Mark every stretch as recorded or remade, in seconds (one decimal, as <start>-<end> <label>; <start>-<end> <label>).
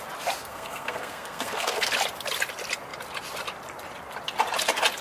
0.0-0.4 recorded; 0.4-1.9 remade; 1.9-5.0 recorded